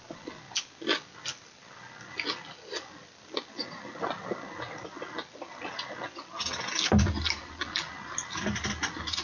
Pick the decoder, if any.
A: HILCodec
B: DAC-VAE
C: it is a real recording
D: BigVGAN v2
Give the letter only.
C